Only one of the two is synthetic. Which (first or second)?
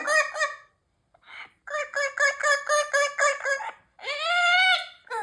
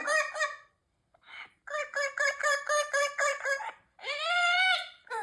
second